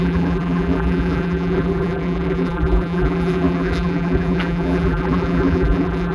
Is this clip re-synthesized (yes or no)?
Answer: yes